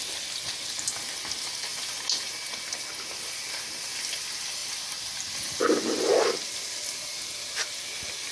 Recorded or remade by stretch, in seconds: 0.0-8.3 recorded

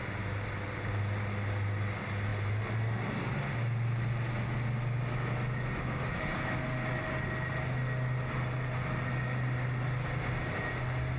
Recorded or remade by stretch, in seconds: 0.0-11.2 recorded

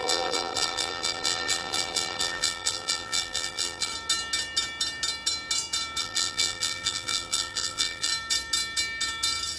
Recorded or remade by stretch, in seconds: 0.0-3.9 remade; 3.9-6.0 recorded; 6.0-8.1 remade; 8.1-9.6 recorded

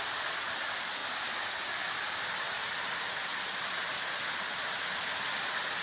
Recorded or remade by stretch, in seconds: 0.0-5.8 recorded